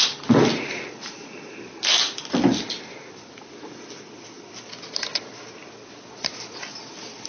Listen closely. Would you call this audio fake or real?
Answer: real